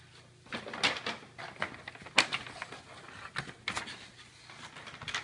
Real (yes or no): yes